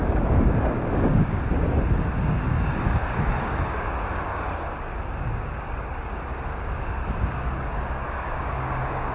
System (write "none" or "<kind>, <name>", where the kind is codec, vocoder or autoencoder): codec, DAC